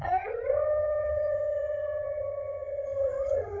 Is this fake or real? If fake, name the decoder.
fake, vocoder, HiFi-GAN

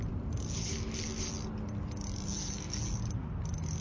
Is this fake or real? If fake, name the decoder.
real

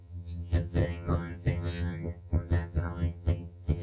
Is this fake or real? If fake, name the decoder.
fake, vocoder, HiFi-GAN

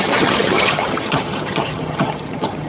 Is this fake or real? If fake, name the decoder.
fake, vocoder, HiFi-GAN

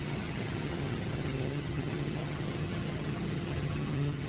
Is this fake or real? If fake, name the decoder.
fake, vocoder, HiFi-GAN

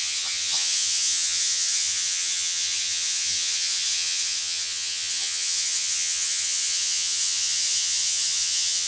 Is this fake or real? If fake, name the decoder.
fake, vocoder, HiFi-GAN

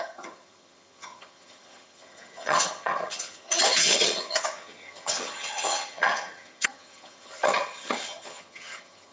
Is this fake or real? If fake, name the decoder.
fake, vocoder, HiFi-GAN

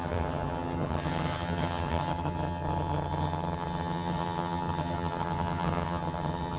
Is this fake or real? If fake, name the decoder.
fake, vocoder, HiFi-GAN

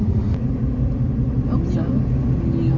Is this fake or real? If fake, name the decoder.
real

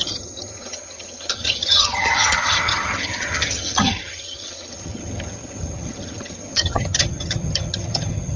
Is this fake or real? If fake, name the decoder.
fake, vocoder, HiFi-GAN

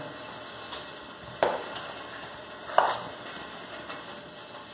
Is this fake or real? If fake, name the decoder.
real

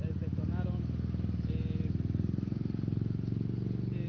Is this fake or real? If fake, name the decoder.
real